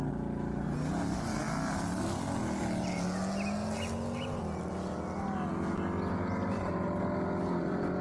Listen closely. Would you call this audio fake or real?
real